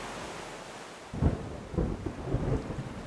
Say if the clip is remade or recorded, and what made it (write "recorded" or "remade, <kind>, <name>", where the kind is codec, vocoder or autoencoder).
recorded